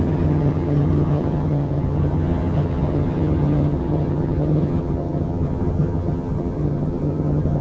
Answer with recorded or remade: remade